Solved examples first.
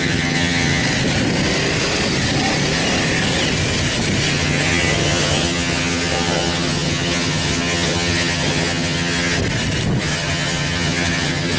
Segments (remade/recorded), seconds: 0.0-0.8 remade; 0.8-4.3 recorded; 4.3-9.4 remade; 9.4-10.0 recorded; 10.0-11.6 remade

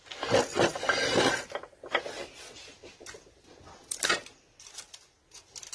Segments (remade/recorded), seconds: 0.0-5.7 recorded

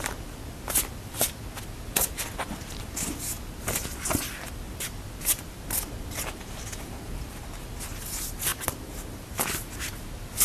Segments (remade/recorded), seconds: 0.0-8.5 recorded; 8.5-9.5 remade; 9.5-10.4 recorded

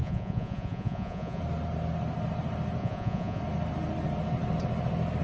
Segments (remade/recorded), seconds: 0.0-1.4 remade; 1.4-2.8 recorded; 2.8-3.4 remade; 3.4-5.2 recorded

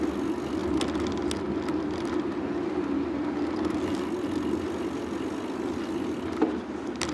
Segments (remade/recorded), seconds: 0.0-7.1 recorded